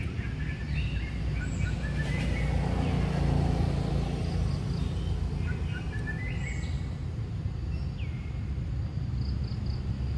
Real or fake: real